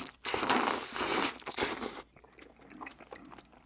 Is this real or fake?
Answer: real